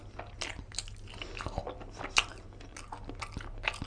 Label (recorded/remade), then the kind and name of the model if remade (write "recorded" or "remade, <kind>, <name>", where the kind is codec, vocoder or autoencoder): recorded